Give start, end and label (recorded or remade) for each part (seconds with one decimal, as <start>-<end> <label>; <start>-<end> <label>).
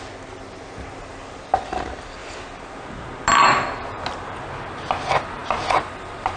0.0-6.4 recorded